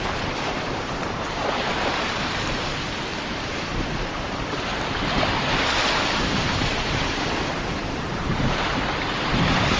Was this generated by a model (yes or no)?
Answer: yes